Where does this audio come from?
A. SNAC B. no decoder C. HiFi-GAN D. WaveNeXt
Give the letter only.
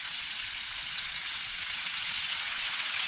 D